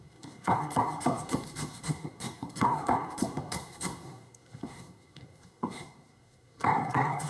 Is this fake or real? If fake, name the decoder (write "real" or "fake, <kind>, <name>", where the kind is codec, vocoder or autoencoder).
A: fake, codec, SNAC